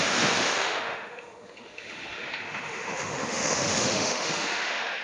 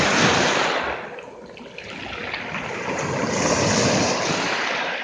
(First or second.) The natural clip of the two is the second